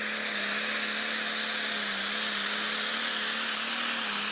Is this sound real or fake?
real